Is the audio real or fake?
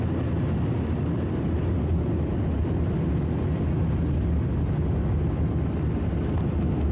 real